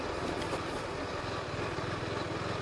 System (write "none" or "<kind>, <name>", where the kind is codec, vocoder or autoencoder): none